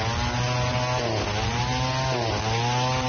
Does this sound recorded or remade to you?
recorded